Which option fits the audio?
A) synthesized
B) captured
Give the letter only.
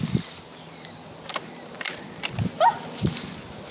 B